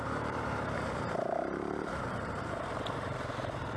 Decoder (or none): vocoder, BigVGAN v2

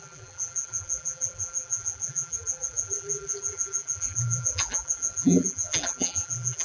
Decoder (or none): vocoder, BigVGAN v2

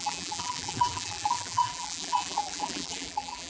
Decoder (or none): vocoder, BigVGAN v2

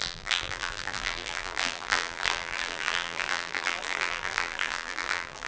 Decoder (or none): vocoder, BigVGAN v2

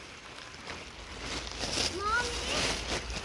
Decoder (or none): none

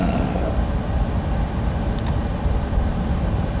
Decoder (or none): vocoder, BigVGAN v2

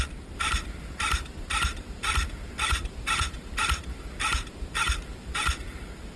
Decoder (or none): vocoder, BigVGAN v2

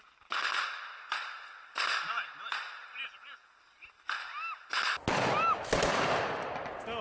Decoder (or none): none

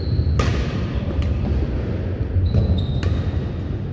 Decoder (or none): none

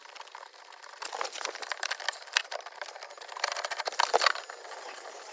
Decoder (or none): vocoder, BigVGAN v2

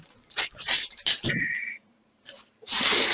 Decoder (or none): vocoder, BigVGAN v2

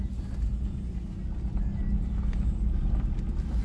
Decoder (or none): none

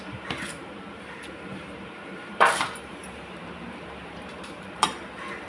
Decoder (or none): vocoder, BigVGAN v2